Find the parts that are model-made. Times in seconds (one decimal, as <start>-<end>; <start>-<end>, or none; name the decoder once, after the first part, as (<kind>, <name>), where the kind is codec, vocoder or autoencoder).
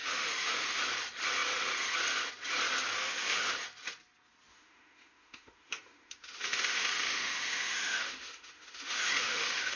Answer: 0.0-0.8 (autoencoder, DAC-VAE); 3.0-3.5; 4.5-9.8